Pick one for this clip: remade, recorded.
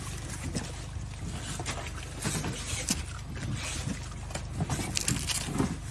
recorded